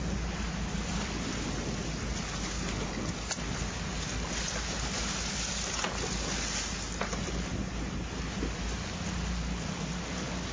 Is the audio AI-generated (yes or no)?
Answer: no